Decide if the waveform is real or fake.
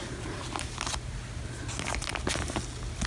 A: real